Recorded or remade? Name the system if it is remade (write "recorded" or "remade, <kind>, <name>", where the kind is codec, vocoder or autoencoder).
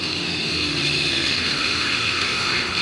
remade, autoencoder, DAC-VAE